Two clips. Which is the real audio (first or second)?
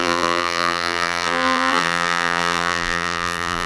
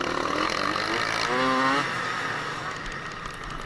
second